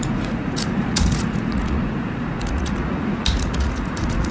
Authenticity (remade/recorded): remade